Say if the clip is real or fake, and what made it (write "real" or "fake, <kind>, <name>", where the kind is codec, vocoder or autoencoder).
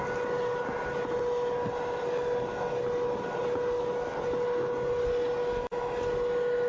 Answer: real